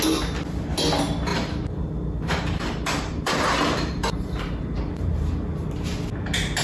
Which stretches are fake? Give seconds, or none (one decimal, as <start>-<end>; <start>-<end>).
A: 1.3-5.3